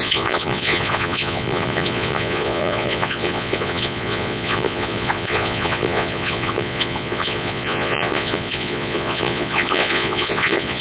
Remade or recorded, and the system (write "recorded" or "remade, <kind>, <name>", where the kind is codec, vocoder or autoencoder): remade, vocoder, Vocos